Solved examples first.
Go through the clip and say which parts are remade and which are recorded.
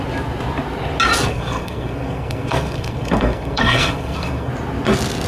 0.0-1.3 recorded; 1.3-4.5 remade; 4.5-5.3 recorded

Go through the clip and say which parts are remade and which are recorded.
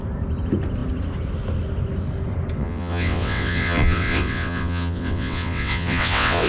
0.0-2.6 recorded; 2.6-6.5 remade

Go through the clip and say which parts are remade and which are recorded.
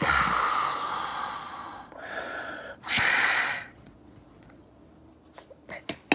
0.0-1.1 recorded; 1.1-4.8 remade; 4.8-6.1 recorded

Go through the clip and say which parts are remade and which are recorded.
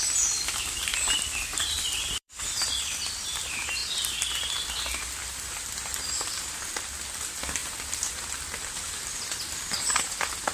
0.0-7.6 remade; 7.6-9.5 recorded; 9.5-10.5 remade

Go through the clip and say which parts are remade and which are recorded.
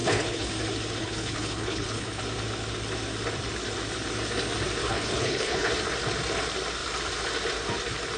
0.0-0.5 remade; 0.5-1.0 recorded; 1.0-2.2 remade; 2.2-4.8 recorded; 4.8-5.7 remade; 5.7-8.2 recorded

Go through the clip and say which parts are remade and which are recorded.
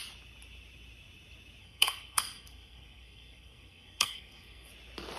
0.0-1.6 recorded; 1.6-4.7 remade; 4.7-5.2 recorded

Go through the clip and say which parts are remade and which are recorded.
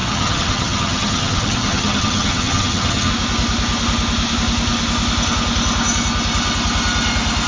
0.0-3.1 remade; 3.1-7.5 recorded